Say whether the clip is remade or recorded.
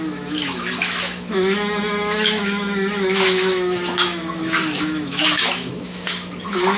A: remade